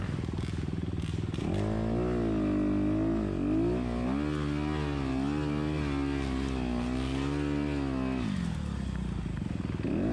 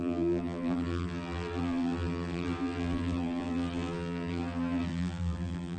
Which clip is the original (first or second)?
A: first